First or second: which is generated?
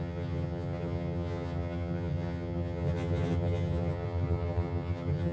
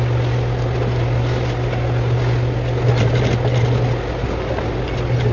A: first